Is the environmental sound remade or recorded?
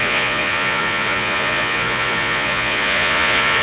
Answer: remade